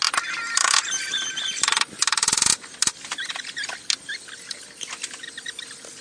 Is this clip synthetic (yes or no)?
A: no